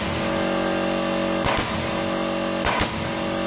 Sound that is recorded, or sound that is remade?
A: recorded